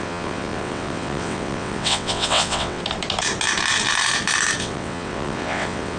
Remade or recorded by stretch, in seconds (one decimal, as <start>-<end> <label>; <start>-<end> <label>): 0.0-2.8 remade; 2.8-4.6 recorded; 4.6-6.0 remade